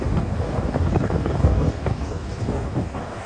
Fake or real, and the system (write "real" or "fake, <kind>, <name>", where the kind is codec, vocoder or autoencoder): fake, codec, DAC